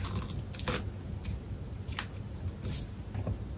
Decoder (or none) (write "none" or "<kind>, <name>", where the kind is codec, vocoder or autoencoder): none